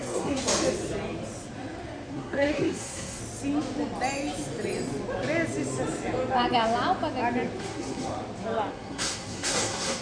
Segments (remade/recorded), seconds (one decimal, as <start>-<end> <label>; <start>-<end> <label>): 0.0-0.4 remade; 0.4-2.1 recorded; 2.1-3.2 remade; 3.2-7.6 recorded; 7.6-8.1 remade; 8.1-8.7 recorded; 8.7-10.0 remade